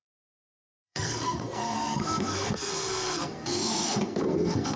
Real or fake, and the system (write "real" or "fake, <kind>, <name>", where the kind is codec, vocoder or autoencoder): fake, codec, SNAC